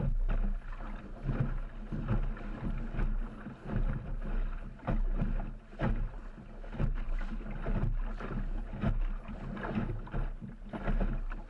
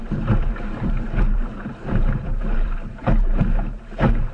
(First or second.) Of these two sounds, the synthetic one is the second